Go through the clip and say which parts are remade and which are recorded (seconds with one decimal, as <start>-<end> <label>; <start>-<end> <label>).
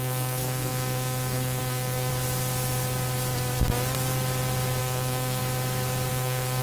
0.0-2.1 remade; 2.1-4.8 recorded; 4.8-5.4 remade; 5.4-6.1 recorded; 6.1-6.6 remade